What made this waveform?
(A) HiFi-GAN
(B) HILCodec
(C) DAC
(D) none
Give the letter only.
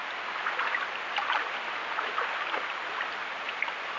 D